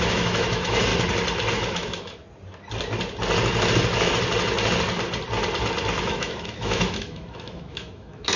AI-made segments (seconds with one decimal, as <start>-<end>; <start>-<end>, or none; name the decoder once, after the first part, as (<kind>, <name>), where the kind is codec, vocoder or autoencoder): 0.0-0.9 (autoencoder, DAC-VAE); 1.5-2.2; 6.0-8.4